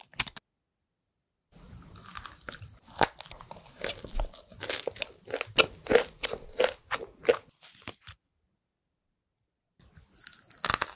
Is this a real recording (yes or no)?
yes